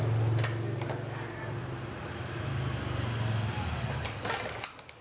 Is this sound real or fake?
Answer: real